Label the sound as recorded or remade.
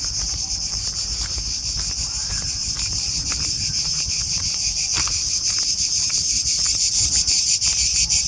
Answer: remade